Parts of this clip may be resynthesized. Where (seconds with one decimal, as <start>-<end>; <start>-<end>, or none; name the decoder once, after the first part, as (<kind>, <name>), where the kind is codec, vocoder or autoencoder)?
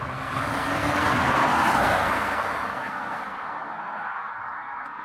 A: 0.0-5.0 (codec, SNAC)